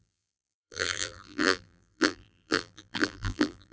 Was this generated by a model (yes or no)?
yes